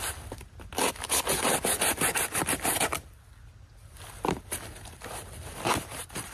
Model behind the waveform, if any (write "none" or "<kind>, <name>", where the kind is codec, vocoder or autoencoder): none